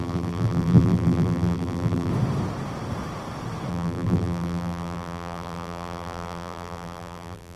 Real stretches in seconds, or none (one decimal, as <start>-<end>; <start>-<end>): 2.1-3.7